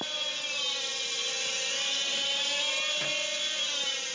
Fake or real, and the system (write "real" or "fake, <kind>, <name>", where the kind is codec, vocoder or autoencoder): real